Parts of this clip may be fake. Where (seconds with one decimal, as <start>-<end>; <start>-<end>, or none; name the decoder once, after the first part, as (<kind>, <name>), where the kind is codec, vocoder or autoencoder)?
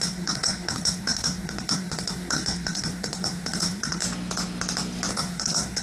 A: 0.0-4.0 (codec, SNAC); 5.1-5.8